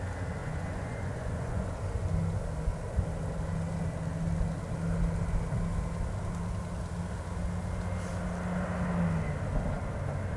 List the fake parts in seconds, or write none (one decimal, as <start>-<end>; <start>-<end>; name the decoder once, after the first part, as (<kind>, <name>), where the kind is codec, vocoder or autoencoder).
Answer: 0.4-1.7 (vocoder, Vocos)